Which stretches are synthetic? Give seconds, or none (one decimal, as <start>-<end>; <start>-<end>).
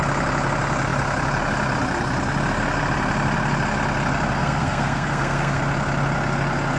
4.4-5.6